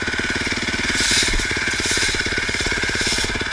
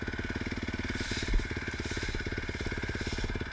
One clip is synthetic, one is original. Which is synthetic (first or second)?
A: first